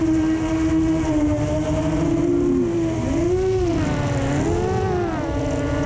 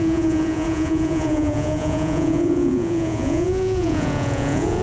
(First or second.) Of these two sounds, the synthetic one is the second